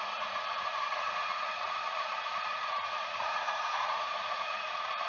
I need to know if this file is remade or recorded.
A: remade